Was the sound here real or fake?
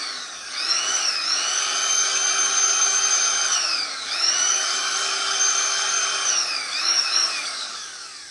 fake